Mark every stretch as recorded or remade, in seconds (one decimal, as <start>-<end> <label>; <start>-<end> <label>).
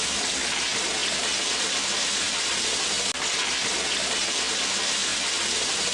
0.0-5.9 recorded